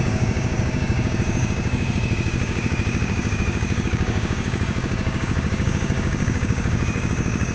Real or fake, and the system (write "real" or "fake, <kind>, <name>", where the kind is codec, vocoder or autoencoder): fake, codec, DAC